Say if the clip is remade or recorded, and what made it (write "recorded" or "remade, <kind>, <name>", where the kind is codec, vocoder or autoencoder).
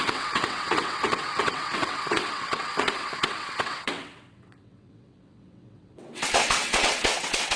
remade, vocoder, WaveNeXt